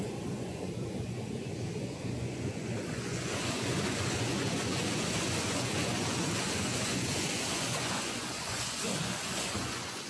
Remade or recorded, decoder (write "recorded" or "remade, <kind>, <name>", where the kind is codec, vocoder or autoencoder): remade, vocoder, Vocos